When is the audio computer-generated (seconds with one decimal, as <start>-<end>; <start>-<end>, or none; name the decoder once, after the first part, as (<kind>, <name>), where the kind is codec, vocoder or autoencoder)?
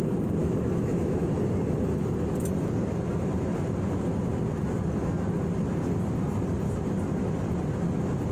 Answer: 0.4-1.3 (autoencoder, DAC-VAE)